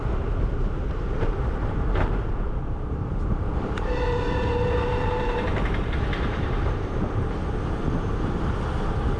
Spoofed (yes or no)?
yes